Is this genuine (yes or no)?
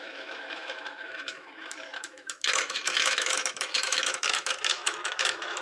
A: no